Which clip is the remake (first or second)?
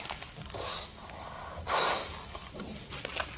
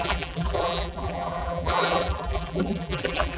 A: second